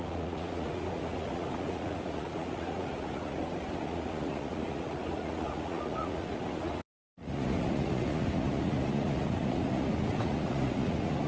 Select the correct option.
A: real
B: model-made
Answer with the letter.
B